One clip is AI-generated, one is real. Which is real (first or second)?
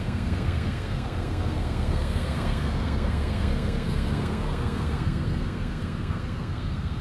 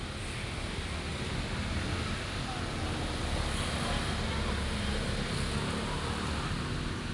second